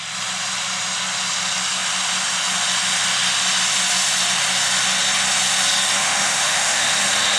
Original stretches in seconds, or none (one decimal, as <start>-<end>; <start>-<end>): 0.0-6.0; 6.9-7.4

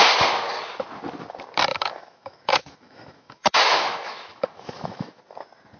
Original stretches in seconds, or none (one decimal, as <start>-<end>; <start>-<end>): 0.0-1.7; 5.2-5.8